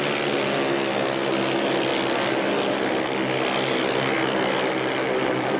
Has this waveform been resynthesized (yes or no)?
no